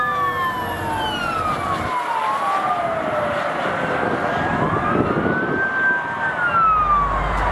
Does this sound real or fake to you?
real